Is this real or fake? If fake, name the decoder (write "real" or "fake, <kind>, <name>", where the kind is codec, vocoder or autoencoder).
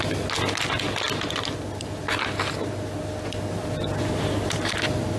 real